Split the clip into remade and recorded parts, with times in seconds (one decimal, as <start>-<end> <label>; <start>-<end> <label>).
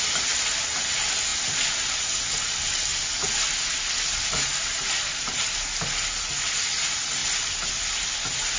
0.0-8.6 recorded